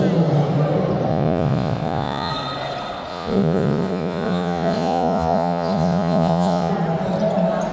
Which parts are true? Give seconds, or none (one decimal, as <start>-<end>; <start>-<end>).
0.0-1.1; 2.3-3.1; 6.7-7.7

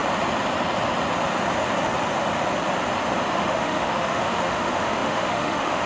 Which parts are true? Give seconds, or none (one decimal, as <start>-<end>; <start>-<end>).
0.0-3.3

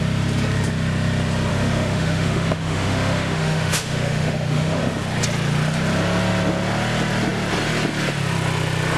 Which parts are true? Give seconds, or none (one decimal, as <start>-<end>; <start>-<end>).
0.0-1.5; 4.8-9.0